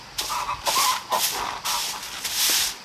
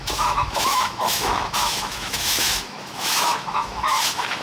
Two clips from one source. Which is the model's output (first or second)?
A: second